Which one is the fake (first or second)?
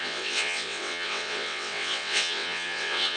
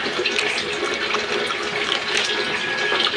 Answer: first